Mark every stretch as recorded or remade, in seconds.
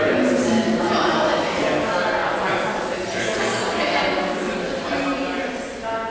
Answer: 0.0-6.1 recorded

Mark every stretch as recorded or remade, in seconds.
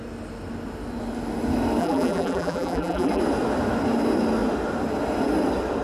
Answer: 0.0-1.8 recorded; 1.8-3.2 remade; 3.2-5.8 recorded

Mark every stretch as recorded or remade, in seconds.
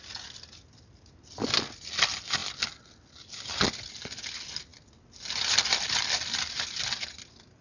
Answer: 0.0-7.6 recorded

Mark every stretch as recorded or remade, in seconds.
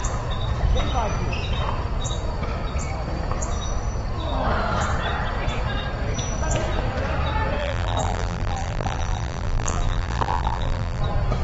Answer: 0.0-7.6 recorded; 7.6-11.0 remade; 11.0-11.4 recorded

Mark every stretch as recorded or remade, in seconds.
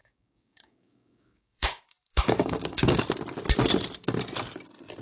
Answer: 0.0-3.0 remade; 3.0-5.0 recorded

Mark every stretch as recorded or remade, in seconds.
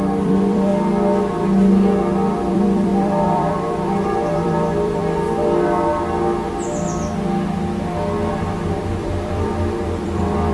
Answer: 0.0-0.7 remade; 0.7-2.5 recorded; 2.5-5.0 remade; 5.0-8.3 recorded; 8.3-10.5 remade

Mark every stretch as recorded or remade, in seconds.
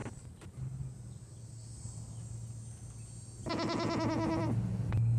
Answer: 0.0-5.2 recorded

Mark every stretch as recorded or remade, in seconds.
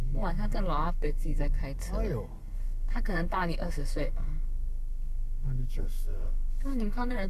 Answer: 0.0-1.6 remade; 1.6-2.4 recorded; 2.4-7.3 remade